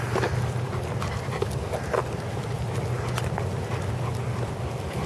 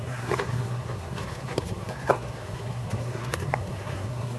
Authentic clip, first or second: first